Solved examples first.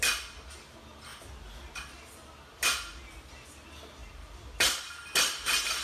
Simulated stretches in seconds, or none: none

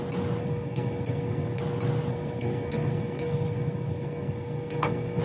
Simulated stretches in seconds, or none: 0.4-1.6 (codec, SNAC); 2.1-5.2

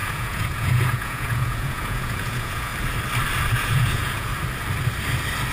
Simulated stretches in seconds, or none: 0.0-2.7 (vocoder, Vocos); 3.5-4.3